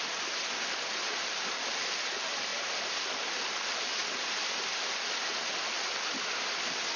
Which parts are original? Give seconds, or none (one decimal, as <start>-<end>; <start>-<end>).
0.0-7.0